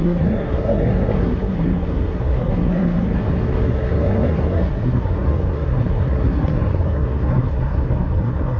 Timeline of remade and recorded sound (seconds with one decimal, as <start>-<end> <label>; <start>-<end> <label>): 0.0-8.6 remade

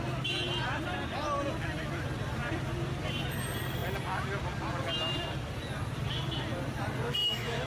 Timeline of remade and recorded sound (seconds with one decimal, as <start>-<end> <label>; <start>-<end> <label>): 0.0-7.2 recorded; 7.2-7.7 remade

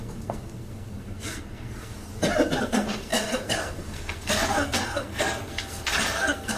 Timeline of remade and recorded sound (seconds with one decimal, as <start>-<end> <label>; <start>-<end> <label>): 0.0-2.1 remade; 2.1-2.6 recorded; 2.6-6.6 remade